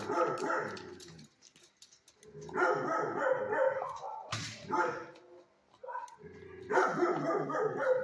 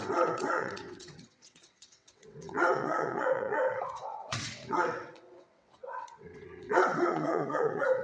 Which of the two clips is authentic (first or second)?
first